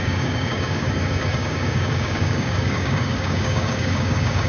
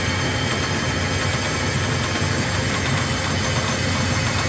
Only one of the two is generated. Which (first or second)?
first